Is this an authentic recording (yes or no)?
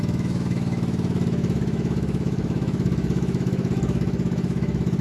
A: no